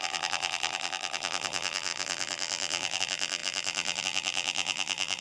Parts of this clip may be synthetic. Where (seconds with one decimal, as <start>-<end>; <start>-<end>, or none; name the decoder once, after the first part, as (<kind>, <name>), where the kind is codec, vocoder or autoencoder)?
0.0-5.2 (vocoder, BigVGAN v2)